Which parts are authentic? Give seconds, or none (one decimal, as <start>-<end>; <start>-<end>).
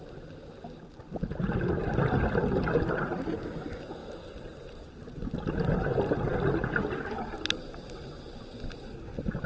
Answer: 0.0-9.5